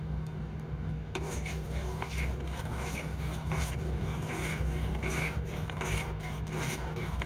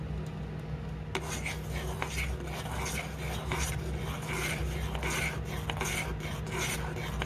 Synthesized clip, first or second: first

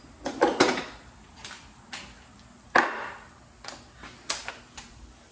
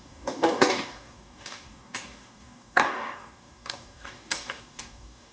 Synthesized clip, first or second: second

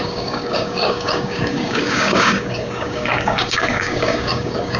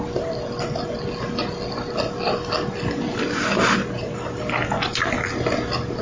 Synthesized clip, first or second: first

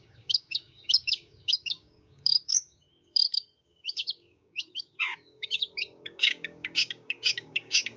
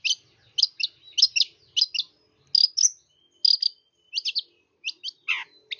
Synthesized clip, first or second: first